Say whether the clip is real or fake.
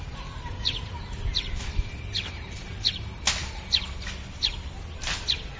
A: real